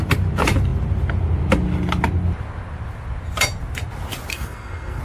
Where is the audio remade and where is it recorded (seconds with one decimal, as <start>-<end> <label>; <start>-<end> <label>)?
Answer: 0.0-4.3 recorded; 4.3-5.0 remade